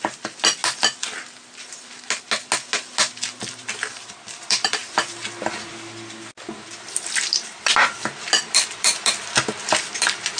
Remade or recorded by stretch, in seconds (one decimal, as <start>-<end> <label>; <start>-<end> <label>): 0.0-0.6 remade; 0.6-3.4 recorded; 3.4-4.8 remade; 4.8-6.5 recorded; 6.5-10.4 remade